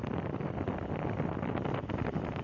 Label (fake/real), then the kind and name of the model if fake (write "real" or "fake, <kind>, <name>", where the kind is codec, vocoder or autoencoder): real